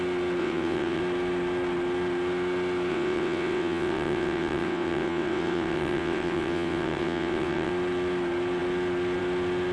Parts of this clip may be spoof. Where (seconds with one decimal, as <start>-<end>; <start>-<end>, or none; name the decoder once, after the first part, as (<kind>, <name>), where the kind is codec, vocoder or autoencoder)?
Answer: 0.4-1.0 (vocoder, WaveNeXt); 2.9-7.7